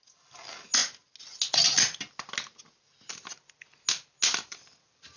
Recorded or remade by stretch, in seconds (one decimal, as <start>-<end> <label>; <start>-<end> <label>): 0.0-5.2 recorded